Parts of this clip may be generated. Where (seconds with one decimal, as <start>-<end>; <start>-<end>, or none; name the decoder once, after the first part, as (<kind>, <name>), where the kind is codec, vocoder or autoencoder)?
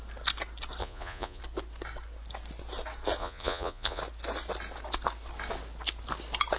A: 0.8-1.4 (vocoder, Vocos); 3.2-4.0